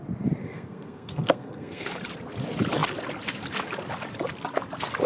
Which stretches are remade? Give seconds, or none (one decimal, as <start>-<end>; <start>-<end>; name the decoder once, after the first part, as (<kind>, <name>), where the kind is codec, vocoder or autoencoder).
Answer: 0.4-1.9 (codec, SNAC)